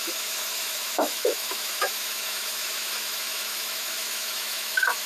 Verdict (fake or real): fake